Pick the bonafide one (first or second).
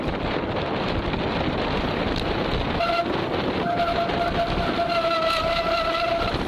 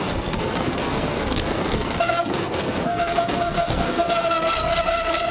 first